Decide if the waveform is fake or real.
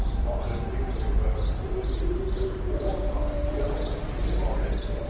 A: fake